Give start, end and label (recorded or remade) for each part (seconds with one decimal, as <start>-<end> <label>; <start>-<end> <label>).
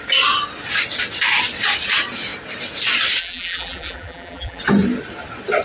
0.0-3.2 recorded; 3.2-4.6 remade; 4.6-5.6 recorded